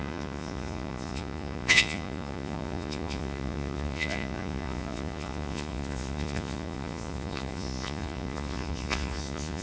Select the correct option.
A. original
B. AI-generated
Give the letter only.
B